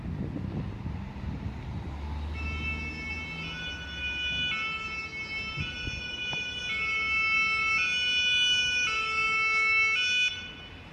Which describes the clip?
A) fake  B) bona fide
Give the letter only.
B